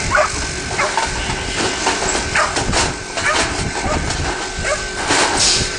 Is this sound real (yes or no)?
yes